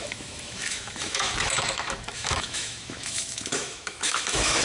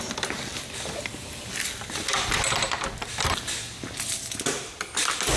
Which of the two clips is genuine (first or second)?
second